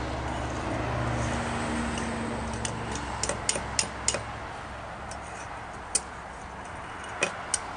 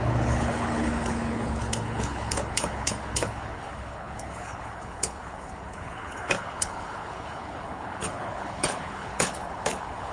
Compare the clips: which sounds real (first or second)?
first